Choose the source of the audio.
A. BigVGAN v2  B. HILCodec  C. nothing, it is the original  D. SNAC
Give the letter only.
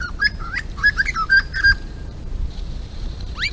A